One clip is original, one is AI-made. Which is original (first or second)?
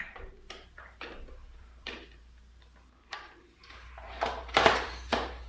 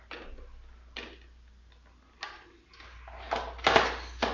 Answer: second